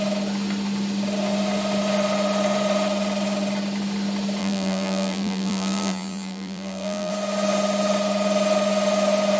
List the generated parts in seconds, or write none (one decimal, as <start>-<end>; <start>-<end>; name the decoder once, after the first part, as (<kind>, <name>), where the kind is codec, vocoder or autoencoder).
4.4-7.1 (vocoder, BigVGAN v2)